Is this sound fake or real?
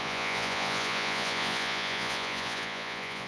fake